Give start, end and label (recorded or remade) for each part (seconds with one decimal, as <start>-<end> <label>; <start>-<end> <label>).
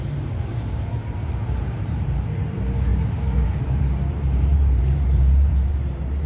0.0-6.3 remade